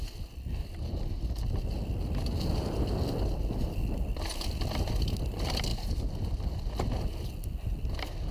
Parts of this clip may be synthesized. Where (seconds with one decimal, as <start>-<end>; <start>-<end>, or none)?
none